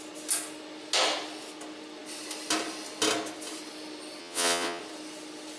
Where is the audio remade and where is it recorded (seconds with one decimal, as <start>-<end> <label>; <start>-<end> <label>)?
0.0-4.2 recorded; 4.2-4.8 remade; 4.8-5.6 recorded